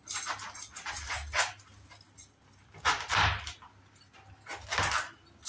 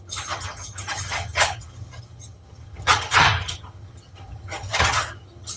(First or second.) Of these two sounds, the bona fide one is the first